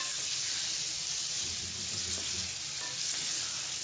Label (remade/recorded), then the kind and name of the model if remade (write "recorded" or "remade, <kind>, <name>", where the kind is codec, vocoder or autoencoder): recorded